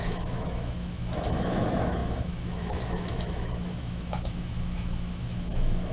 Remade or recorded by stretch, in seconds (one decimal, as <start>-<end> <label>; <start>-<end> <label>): 0.0-5.9 remade